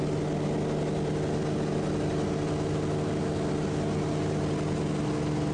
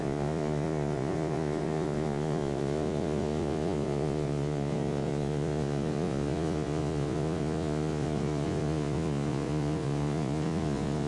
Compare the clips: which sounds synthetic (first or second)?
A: second